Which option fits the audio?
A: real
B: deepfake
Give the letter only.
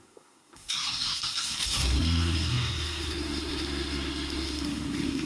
B